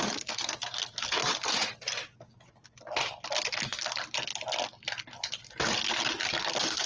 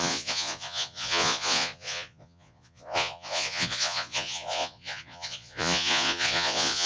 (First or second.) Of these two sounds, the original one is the first